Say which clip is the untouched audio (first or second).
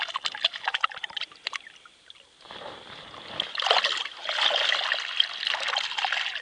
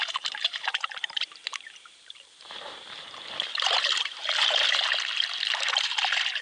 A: first